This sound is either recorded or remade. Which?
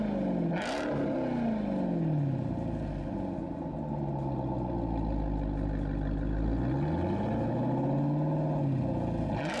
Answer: recorded